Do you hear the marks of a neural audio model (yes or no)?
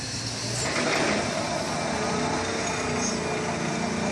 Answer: no